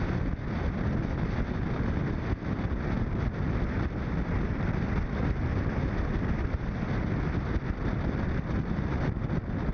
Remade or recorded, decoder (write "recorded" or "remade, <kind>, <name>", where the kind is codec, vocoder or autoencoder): recorded